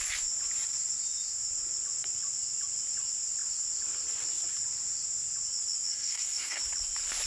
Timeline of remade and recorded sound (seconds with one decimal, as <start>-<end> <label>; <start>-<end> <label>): 0.0-5.9 recorded; 5.9-6.6 remade; 6.6-7.3 recorded